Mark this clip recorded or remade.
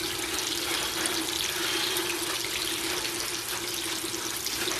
recorded